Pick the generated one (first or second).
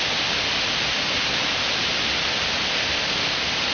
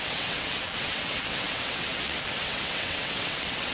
second